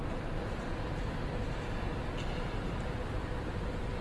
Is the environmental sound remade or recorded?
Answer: recorded